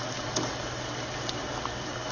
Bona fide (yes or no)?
yes